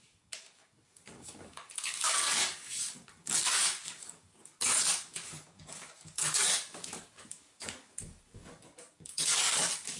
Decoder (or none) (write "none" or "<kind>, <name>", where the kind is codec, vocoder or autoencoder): codec, DAC